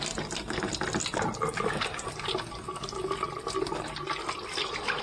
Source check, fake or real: real